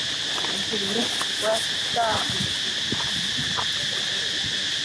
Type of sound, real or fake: real